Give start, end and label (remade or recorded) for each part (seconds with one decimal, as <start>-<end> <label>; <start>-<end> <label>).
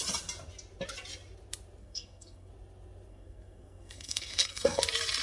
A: 0.0-1.8 recorded; 1.8-2.5 remade; 2.5-3.1 recorded; 3.1-4.8 remade; 4.8-5.2 recorded